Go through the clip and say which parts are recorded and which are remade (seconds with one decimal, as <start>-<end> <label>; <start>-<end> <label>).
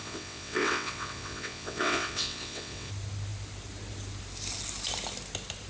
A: 0.0-2.9 remade; 2.9-5.7 recorded